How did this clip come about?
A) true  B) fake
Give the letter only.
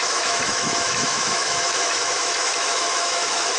B